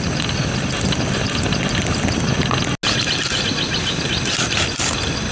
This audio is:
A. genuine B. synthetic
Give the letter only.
A